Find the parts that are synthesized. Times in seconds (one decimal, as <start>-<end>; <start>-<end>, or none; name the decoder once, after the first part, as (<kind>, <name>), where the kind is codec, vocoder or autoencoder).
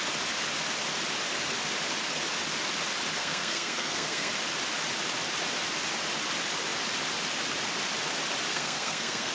3.2-4.3 (codec, SNAC); 8.5-9.3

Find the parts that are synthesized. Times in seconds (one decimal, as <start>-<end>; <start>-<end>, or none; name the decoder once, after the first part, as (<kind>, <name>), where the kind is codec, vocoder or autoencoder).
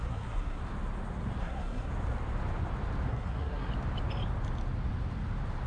0.0-0.6 (codec, SNAC); 1.4-1.9; 3.1-3.7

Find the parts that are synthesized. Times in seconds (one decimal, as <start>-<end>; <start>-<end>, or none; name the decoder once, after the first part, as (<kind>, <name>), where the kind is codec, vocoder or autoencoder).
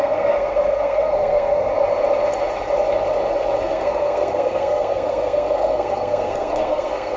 0.0-1.7 (codec, SNAC); 3.6-7.2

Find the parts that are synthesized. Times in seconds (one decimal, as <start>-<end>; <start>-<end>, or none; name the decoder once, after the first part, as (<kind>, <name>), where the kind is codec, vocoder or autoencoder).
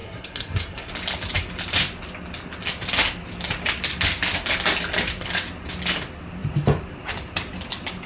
0.0-0.9 (codec, SNAC)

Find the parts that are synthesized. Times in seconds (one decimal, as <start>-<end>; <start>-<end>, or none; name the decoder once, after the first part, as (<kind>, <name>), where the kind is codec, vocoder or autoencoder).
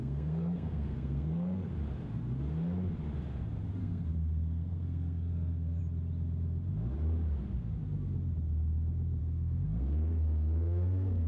0.0-1.7 (codec, SNAC); 3.8-5.8; 9.2-11.3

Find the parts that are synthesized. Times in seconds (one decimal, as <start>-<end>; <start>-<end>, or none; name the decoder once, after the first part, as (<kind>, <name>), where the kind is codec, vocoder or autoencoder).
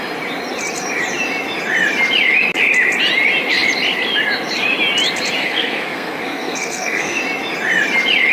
5.4-7.2 (codec, SNAC)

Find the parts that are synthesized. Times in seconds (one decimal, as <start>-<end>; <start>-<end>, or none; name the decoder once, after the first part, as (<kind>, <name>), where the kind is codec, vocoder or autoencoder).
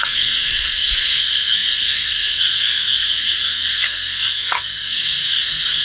0.0-5.8 (codec, SNAC)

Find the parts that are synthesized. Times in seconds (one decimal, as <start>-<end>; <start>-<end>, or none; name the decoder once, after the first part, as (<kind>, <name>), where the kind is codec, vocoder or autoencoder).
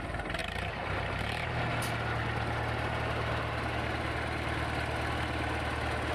none